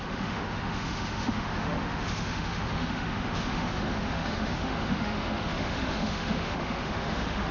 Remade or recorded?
remade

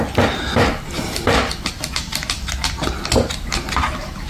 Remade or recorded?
recorded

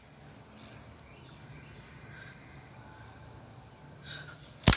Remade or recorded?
recorded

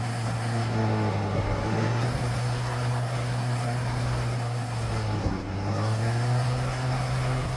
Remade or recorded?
remade